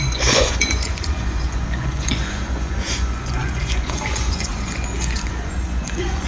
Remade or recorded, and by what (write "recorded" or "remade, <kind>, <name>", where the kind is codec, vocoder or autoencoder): remade, vocoder, Vocos